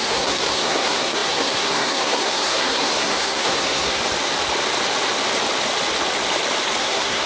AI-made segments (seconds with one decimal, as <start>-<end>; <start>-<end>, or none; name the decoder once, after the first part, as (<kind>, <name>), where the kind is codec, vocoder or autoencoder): 0.0-4.0 (codec, SNAC); 6.8-7.3